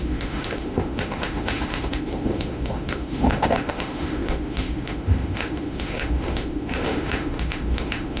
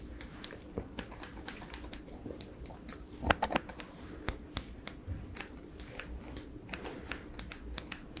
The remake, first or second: first